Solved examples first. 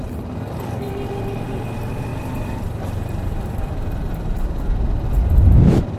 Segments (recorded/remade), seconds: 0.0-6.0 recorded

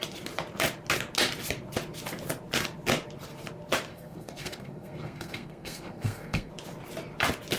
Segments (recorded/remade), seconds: 0.0-3.9 recorded; 3.9-6.5 remade; 6.5-7.6 recorded

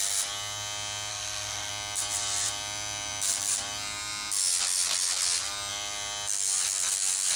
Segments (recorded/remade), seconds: 0.0-1.1 recorded; 1.1-1.7 remade; 1.7-7.4 recorded